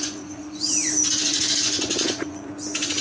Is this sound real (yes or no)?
no